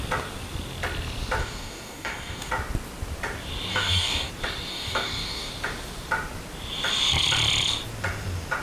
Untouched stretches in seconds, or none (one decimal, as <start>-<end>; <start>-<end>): 0.0-1.4; 2.5-3.7; 4.3-4.7; 5.5-8.6